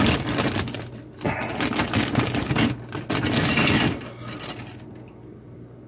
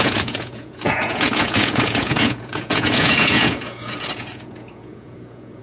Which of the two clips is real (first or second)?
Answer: first